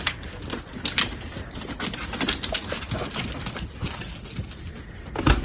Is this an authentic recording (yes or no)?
yes